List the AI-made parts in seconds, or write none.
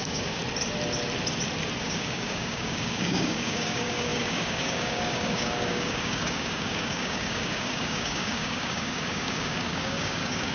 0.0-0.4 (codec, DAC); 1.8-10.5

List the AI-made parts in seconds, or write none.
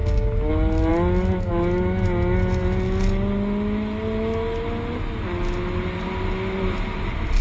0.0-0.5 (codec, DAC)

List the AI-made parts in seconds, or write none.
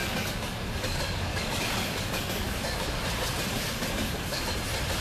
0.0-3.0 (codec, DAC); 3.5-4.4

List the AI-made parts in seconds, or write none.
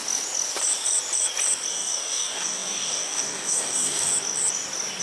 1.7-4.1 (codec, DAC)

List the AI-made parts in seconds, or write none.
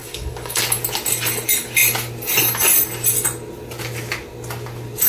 0.0-0.6 (codec, DAC)